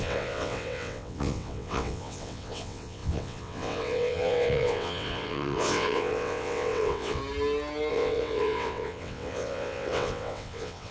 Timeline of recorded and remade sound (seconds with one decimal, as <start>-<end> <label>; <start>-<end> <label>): 0.0-7.2 remade; 7.2-7.9 recorded; 7.9-10.9 remade